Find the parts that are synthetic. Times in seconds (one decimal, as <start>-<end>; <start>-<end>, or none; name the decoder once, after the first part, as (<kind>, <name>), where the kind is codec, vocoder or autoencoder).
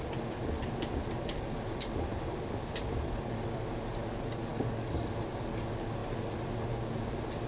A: 4.5-5.1 (codec, DAC)